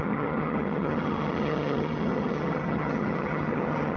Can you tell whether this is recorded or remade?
remade